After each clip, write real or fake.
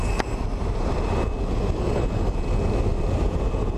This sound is real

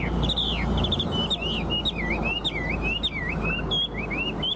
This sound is real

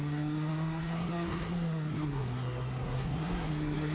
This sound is fake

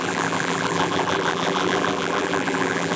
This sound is fake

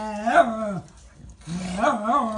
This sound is real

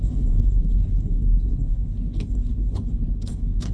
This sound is fake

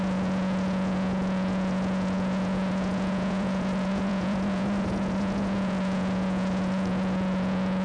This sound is fake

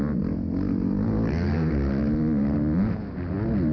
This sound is real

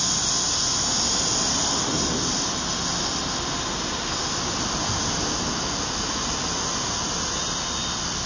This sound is real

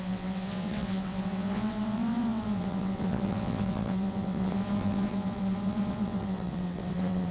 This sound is fake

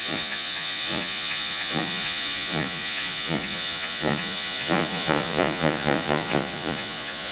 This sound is fake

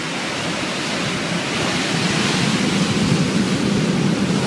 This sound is real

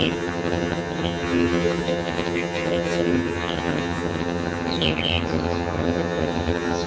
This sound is fake